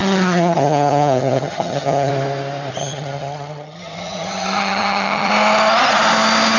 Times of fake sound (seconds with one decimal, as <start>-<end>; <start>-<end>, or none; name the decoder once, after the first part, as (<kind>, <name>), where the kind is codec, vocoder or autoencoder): 0.0-2.1 (vocoder, HiFi-GAN); 2.8-5.3

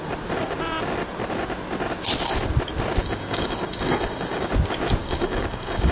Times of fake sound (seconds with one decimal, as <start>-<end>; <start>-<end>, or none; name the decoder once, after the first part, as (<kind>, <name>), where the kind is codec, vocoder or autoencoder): 3.0-4.5 (codec, DAC); 5.0-5.9